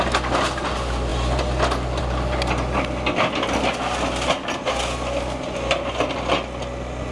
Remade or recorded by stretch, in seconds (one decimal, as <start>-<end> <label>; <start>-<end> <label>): 0.0-7.1 recorded

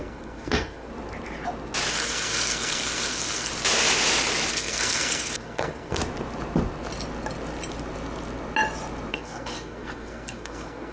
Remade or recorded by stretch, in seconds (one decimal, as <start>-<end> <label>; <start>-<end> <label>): 0.0-0.9 remade; 0.9-1.9 recorded; 1.9-3.5 remade; 3.5-4.5 recorded; 4.5-6.0 remade; 6.0-9.1 recorded; 9.1-10.9 remade

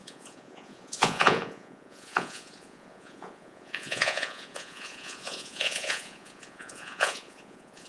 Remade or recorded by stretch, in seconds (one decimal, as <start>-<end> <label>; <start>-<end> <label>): 0.0-7.9 remade

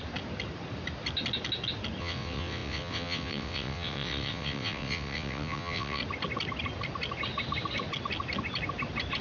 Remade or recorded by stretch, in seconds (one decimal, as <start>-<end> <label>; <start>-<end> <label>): 0.0-2.0 recorded; 2.0-6.0 remade; 6.0-9.2 recorded

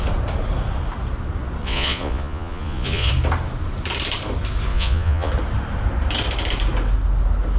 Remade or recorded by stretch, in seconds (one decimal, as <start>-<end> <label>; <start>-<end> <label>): 0.0-1.6 recorded; 1.6-3.1 remade; 3.1-4.7 recorded; 4.7-5.3 remade; 5.3-7.6 recorded

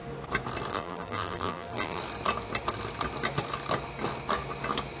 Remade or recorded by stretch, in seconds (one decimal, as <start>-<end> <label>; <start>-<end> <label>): 0.0-0.7 recorded; 0.7-2.0 remade; 2.0-5.0 recorded